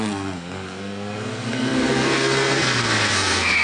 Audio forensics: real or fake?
fake